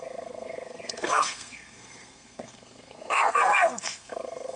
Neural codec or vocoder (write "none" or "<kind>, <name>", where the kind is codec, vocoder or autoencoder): codec, SNAC